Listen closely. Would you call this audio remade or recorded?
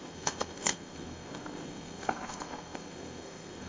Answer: remade